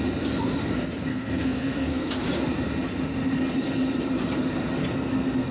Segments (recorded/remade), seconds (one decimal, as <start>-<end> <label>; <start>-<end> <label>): 0.0-1.1 recorded; 1.1-2.1 remade; 2.1-5.5 recorded